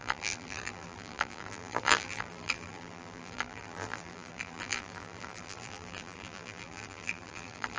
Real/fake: fake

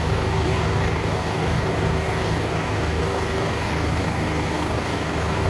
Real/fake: fake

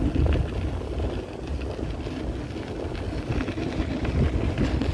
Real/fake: real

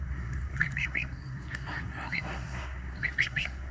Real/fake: fake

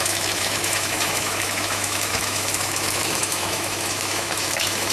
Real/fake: fake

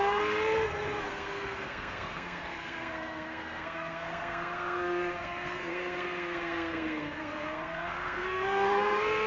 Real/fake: fake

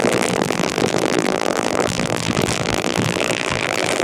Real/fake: fake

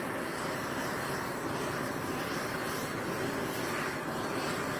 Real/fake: real